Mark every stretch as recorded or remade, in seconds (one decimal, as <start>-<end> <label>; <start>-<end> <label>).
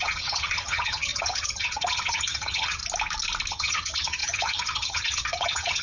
0.0-2.8 remade; 2.8-3.5 recorded; 3.5-5.8 remade